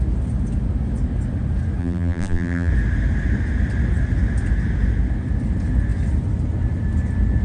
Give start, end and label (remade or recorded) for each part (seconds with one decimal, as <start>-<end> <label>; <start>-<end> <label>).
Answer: 0.0-1.8 recorded; 1.8-2.7 remade; 2.7-7.4 recorded